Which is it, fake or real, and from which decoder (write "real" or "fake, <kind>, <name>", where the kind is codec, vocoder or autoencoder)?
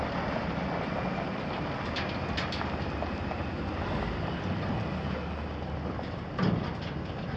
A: real